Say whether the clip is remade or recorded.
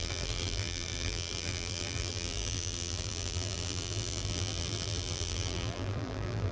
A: remade